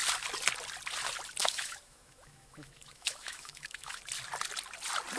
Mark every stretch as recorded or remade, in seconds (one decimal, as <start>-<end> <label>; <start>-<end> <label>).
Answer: 0.0-1.4 recorded; 1.4-4.0 remade; 4.0-5.2 recorded